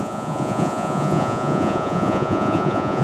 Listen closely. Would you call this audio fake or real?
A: fake